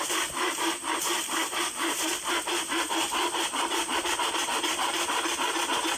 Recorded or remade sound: recorded